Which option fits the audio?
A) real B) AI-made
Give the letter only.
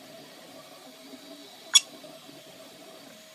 B